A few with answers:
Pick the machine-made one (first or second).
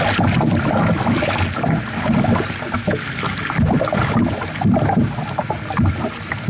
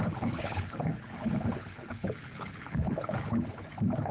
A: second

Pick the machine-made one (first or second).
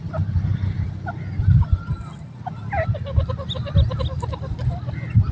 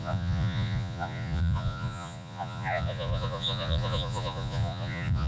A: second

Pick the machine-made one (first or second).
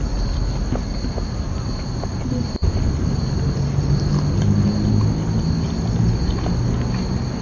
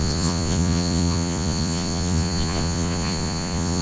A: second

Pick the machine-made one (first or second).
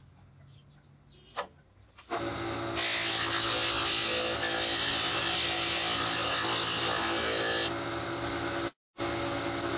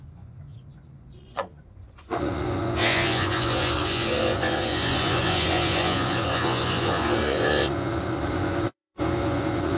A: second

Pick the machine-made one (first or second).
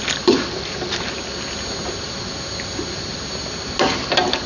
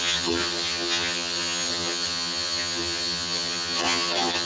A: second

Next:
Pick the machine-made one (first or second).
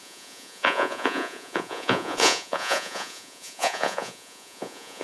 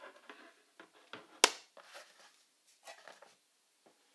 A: first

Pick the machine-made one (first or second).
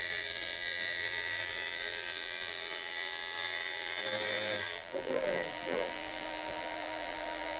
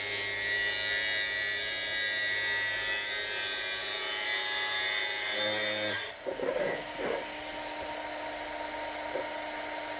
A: first